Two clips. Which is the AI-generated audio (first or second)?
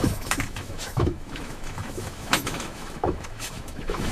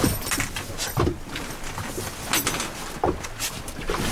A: first